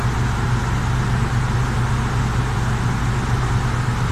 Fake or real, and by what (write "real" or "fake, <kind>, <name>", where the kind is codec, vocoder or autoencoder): real